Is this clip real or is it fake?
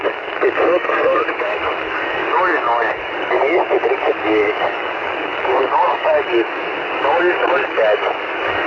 fake